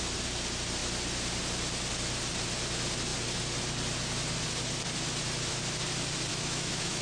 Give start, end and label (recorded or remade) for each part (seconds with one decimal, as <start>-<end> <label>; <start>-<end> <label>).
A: 0.0-6.3 recorded; 6.3-7.0 remade